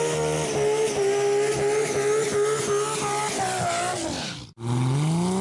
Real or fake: real